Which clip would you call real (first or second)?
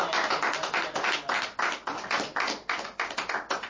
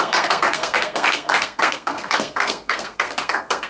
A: first